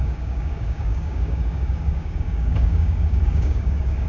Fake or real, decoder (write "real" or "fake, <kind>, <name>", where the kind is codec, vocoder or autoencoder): fake, codec, DAC